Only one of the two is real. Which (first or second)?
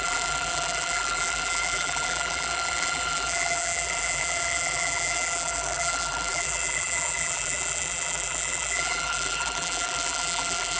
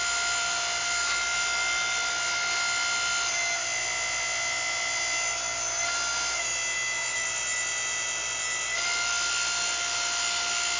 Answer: second